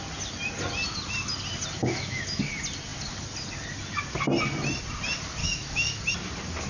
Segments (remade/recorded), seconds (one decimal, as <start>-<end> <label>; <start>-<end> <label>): 0.0-1.8 recorded; 1.8-2.4 remade; 2.4-5.4 recorded; 5.4-6.0 remade; 6.0-6.7 recorded